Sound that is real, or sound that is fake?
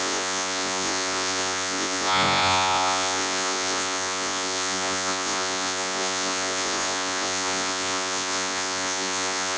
fake